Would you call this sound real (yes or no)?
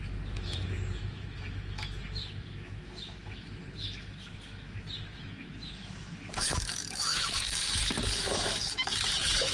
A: no